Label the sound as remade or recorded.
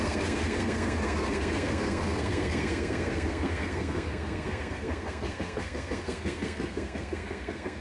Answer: remade